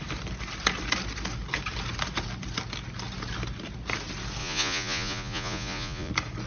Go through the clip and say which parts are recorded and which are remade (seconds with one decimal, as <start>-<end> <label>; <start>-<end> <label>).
0.0-4.4 recorded; 4.4-6.1 remade; 6.1-6.5 recorded